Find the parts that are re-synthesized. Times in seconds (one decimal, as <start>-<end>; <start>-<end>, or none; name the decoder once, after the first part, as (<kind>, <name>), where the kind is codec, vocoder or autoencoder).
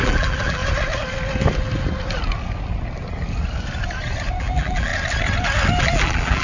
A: 0.0-0.6 (vocoder, BigVGAN v2); 4.4-4.9; 5.8-6.4